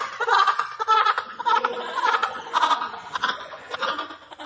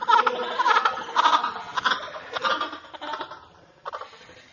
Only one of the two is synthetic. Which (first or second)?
first